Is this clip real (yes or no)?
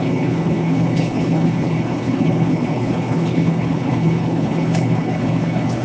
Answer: no